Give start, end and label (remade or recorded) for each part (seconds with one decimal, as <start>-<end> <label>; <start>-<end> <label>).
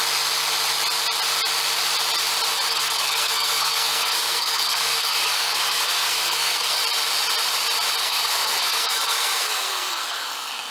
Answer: 0.0-2.7 recorded; 2.7-6.8 remade; 6.8-8.0 recorded; 8.0-10.7 remade